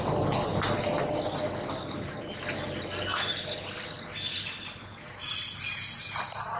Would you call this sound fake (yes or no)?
no